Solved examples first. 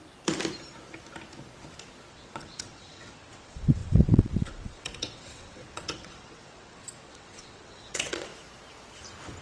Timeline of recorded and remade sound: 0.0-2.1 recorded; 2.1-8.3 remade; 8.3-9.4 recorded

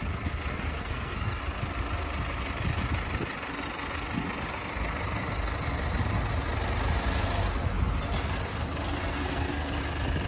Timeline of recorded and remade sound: 0.0-0.5 recorded; 0.5-1.4 remade; 1.4-8.8 recorded; 8.8-9.8 remade; 9.8-10.3 recorded

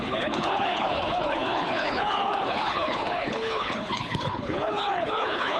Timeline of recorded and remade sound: 0.0-5.6 remade

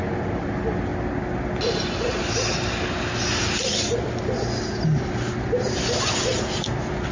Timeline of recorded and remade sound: 0.0-7.1 recorded